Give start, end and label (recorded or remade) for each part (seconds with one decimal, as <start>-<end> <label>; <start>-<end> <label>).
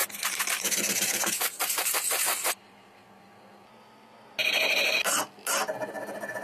0.0-2.6 remade; 2.6-4.4 recorded; 4.4-5.0 remade; 5.0-6.4 recorded